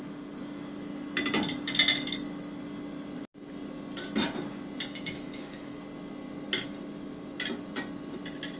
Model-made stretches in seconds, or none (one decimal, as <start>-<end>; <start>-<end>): 4.9-5.8